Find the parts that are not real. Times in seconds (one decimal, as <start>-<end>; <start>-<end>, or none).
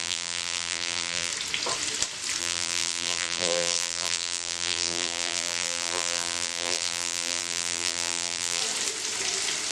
0.0-1.3; 2.4-8.6